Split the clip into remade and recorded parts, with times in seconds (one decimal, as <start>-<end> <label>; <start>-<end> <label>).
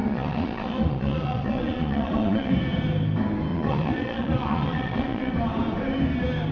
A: 0.0-2.5 remade; 2.5-3.5 recorded; 3.5-5.3 remade; 5.3-6.5 recorded